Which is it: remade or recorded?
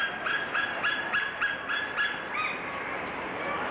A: recorded